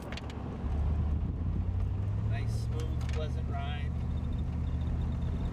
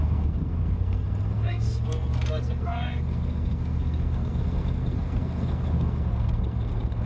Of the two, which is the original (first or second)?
first